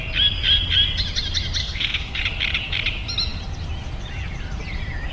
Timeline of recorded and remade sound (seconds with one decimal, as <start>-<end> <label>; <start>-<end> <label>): 0.0-1.6 recorded; 1.6-2.2 remade; 2.2-5.1 recorded